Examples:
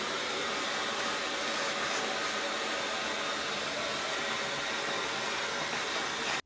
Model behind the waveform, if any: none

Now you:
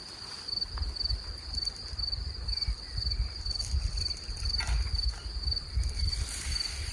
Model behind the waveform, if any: vocoder, BigVGAN v2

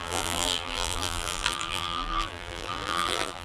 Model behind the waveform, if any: vocoder, BigVGAN v2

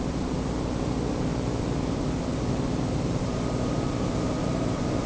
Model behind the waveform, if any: vocoder, BigVGAN v2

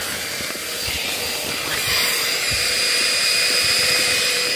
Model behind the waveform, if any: vocoder, BigVGAN v2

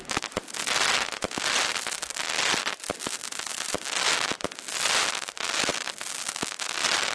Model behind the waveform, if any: none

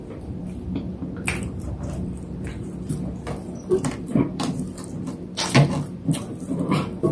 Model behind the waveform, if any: vocoder, BigVGAN v2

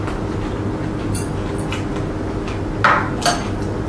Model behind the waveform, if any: none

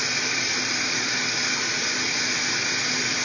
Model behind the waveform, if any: none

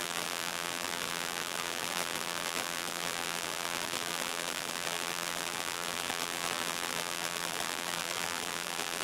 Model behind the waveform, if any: vocoder, BigVGAN v2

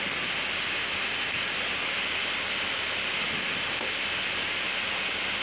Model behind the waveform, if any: none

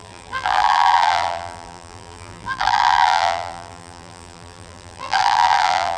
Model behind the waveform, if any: vocoder, BigVGAN v2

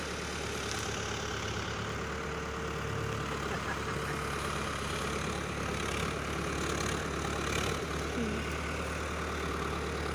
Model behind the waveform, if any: none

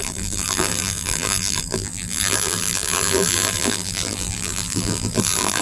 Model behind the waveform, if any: vocoder, BigVGAN v2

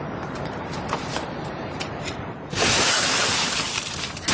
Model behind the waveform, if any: vocoder, BigVGAN v2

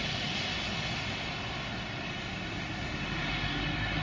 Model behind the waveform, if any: none